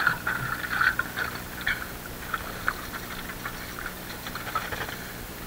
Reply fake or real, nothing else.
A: real